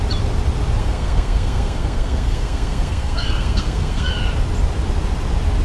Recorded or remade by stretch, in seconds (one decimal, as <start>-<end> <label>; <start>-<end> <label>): 0.0-0.8 recorded; 0.8-4.1 remade; 4.1-5.6 recorded